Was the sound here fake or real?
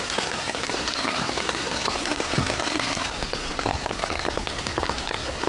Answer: fake